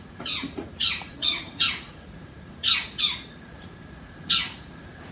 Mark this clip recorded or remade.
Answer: remade